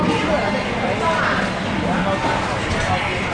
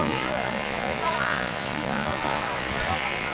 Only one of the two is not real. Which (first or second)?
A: second